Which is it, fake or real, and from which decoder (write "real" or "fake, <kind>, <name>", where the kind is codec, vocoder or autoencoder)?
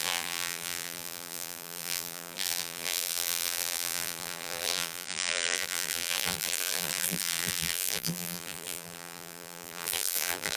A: fake, vocoder, BigVGAN v2